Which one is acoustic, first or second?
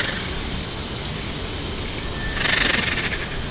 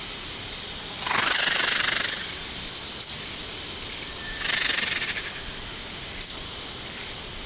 first